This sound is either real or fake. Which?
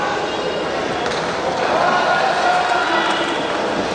real